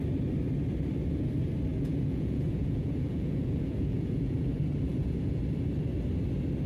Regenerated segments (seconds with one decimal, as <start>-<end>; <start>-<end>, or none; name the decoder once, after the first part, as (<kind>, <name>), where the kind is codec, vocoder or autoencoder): 1.7-4.5 (vocoder, Vocos); 4.9-5.4